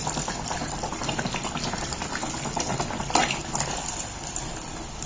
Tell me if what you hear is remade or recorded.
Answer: recorded